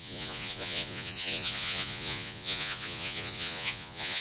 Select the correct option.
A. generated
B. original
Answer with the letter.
A